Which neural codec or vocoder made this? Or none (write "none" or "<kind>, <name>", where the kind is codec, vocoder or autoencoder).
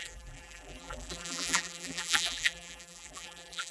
vocoder, BigVGAN v2